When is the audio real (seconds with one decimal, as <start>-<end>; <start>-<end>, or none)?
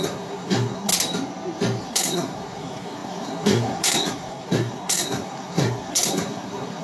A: 0.9-1.8